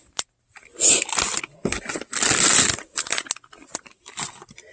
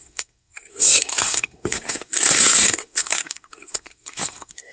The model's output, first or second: second